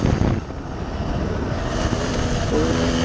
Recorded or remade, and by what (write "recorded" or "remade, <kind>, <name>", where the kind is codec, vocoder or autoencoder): recorded